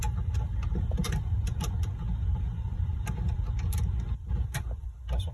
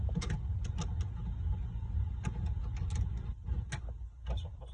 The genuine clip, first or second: second